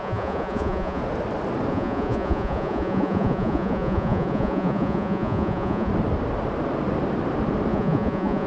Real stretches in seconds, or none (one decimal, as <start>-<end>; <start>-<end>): 1.0-1.7; 5.9-7.7